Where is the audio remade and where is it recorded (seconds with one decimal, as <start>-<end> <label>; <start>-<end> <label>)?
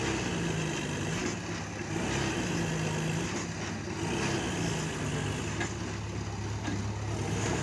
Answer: 0.0-7.6 recorded